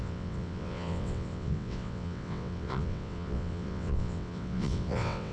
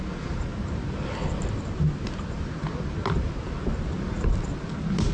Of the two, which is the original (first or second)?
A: second